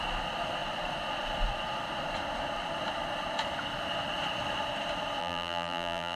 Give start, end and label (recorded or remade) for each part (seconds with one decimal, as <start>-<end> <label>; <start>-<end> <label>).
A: 0.0-5.2 recorded; 5.2-6.2 remade